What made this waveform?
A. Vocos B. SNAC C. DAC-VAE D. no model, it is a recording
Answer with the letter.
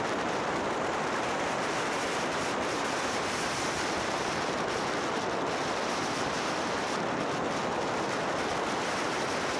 D